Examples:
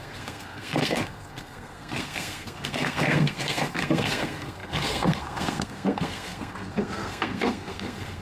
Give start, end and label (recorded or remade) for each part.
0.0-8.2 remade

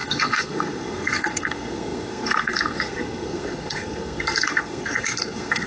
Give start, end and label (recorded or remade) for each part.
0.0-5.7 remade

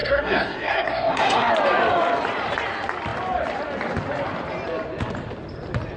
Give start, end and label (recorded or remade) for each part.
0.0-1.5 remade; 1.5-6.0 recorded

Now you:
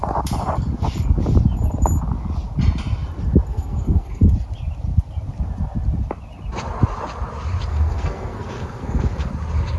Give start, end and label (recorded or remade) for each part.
0.0-3.5 recorded; 3.5-4.2 remade; 4.2-7.7 recorded; 7.7-9.3 remade; 9.3-9.8 recorded

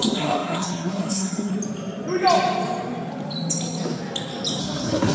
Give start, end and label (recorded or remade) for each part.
0.0-1.5 remade; 1.5-4.6 recorded; 4.6-5.1 remade

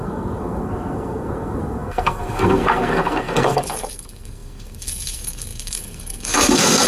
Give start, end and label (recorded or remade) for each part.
0.0-6.9 remade